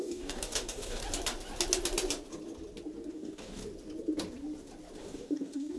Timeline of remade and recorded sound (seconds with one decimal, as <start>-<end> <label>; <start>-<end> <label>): 0.0-1.0 remade; 1.0-3.1 recorded; 3.1-3.6 remade; 3.6-5.0 recorded; 5.0-5.8 remade